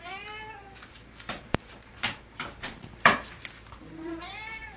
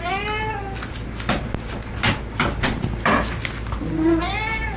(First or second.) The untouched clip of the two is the second